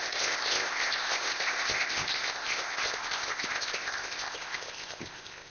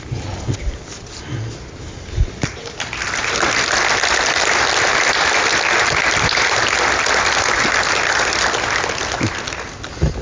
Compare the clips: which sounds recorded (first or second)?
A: second